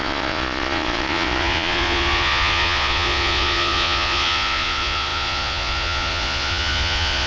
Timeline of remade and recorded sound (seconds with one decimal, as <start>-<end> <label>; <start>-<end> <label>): 0.0-7.3 remade